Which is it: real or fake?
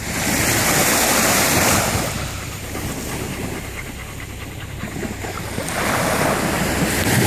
fake